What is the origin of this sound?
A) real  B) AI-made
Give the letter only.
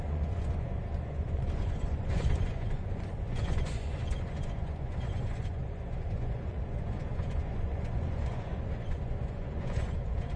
B